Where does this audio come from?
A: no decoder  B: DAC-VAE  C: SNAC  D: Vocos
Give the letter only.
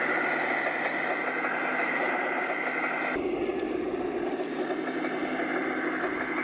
A